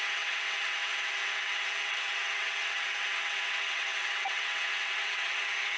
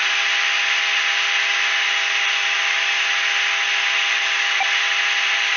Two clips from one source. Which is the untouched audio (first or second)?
second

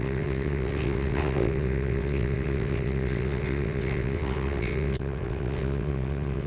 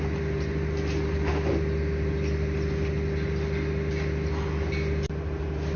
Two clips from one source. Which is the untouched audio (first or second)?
second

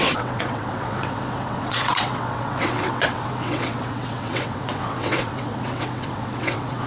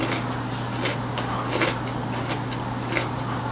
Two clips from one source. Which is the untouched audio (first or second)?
second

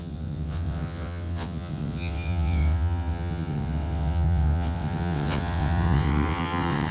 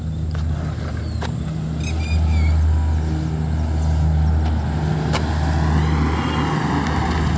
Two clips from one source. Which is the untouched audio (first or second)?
second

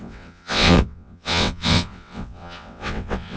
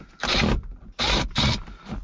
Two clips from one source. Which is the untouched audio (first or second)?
second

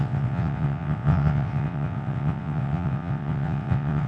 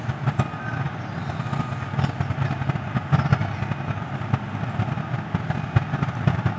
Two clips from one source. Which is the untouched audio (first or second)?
second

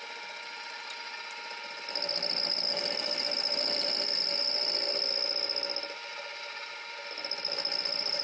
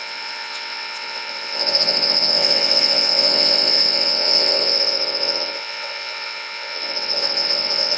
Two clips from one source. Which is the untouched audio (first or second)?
first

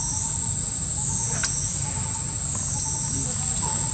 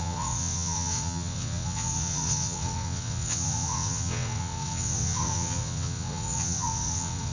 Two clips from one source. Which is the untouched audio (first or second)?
first